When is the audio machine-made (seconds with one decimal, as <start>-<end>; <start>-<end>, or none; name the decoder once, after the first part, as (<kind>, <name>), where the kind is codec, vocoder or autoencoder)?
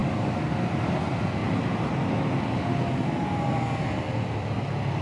0.0-0.5 (codec, DAC)